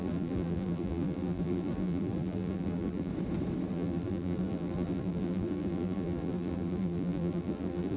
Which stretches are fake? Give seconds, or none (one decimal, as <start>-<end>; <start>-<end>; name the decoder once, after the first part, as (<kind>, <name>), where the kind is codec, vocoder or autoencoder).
0.0-3.1 (vocoder, BigVGAN v2); 3.7-8.0